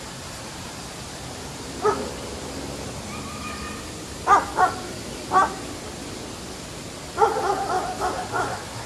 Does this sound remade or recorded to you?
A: recorded